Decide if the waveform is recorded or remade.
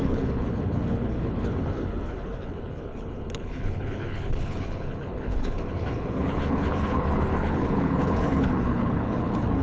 remade